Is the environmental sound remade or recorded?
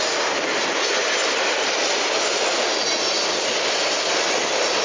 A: recorded